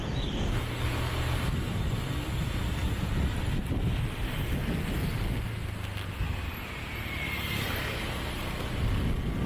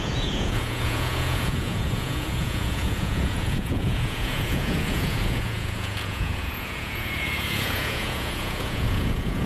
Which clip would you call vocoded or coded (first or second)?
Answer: second